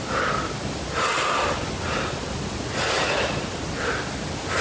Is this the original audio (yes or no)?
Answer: yes